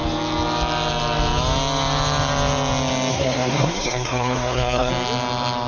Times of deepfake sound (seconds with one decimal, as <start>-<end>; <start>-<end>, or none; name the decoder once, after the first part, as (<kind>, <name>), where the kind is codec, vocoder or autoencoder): 3.1-4.9 (codec, SNAC)

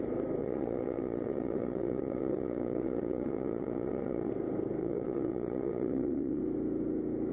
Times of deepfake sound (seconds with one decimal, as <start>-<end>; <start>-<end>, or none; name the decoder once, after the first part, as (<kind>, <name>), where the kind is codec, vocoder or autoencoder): 0.4-4.3 (vocoder, WaveNeXt); 4.8-6.4

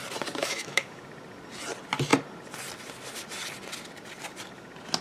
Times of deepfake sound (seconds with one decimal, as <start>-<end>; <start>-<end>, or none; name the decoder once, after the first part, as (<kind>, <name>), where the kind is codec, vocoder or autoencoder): 0.4-1.0 (autoencoder, DAC-VAE)